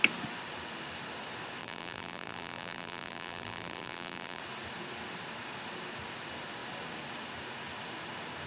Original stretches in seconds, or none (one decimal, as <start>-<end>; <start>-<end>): 0.0-1.6; 4.4-8.5